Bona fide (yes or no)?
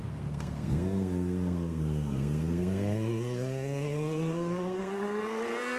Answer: no